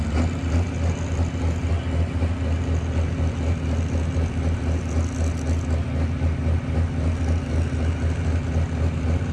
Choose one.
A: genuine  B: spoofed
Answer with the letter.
A